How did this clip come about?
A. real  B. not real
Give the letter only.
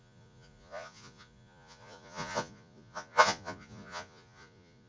B